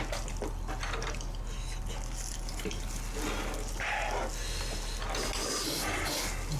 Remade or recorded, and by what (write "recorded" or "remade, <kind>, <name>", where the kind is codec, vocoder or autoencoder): recorded